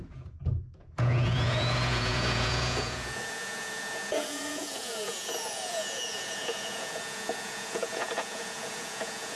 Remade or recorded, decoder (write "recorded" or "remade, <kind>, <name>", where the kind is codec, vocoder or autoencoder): remade, vocoder, Vocos